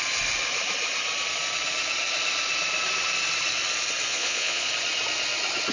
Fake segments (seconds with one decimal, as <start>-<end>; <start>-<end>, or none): 4.1-4.7